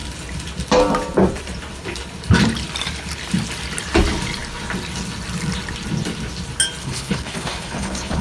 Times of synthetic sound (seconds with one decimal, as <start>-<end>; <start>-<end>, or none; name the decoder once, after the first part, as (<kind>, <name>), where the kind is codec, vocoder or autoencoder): 6.8-8.2 (codec, HILCodec)